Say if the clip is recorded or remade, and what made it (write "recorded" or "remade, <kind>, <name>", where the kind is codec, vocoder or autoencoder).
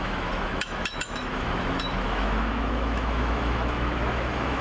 remade, autoencoder, DAC-VAE